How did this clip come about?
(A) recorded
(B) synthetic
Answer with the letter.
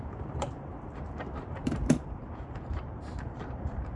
B